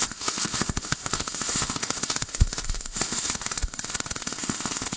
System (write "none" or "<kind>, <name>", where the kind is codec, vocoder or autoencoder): codec, ZipCodec